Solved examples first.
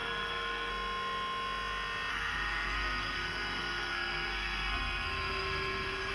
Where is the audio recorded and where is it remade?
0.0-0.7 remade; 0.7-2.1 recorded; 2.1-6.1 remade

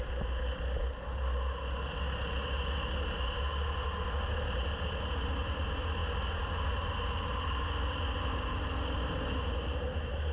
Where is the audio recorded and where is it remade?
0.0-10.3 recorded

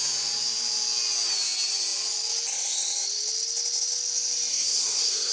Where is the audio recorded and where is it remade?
0.0-4.5 recorded; 4.5-5.3 remade

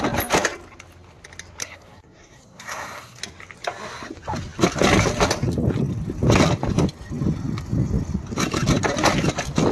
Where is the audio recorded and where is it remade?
0.0-1.6 recorded; 1.6-3.2 remade; 3.2-9.7 recorded